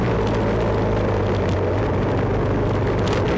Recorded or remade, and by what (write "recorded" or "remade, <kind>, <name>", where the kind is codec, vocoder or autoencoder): recorded